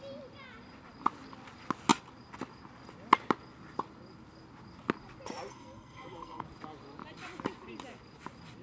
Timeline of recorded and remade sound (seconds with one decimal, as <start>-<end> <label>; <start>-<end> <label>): 0.0-5.5 recorded; 5.5-6.4 remade; 6.4-8.6 recorded